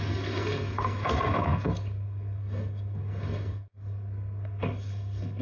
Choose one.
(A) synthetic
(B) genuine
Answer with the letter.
A